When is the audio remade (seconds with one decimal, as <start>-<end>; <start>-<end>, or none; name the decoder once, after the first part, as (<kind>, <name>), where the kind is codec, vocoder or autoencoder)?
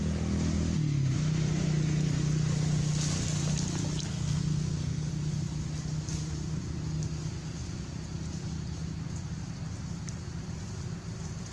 4.1-5.1 (codec, SNAC)